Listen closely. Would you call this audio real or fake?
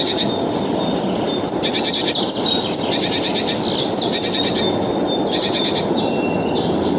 real